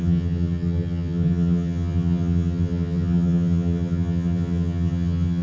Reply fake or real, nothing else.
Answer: fake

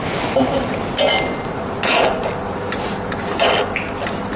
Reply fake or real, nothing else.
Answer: real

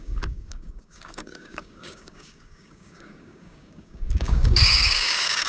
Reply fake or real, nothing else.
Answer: fake